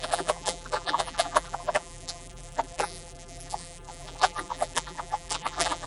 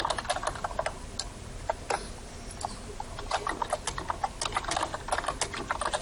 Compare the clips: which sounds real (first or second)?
second